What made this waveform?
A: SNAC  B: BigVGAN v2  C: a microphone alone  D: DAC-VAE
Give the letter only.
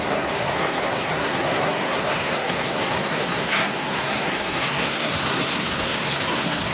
A